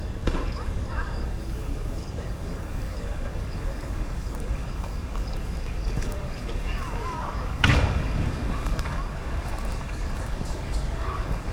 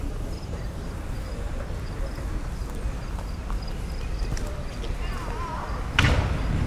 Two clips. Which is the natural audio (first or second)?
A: second